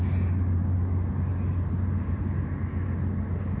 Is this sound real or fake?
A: real